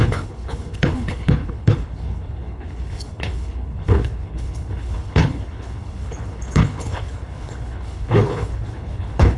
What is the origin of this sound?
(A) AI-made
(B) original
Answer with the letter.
A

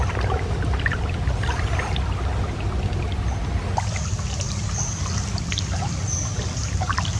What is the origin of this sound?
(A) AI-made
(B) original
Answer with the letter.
B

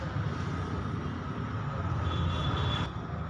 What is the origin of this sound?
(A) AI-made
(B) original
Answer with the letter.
B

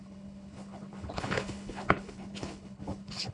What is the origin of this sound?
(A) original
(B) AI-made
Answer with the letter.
B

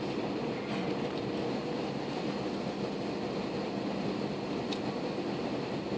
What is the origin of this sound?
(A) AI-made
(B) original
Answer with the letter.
B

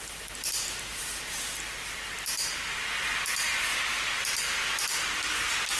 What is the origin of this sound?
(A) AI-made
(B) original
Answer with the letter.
B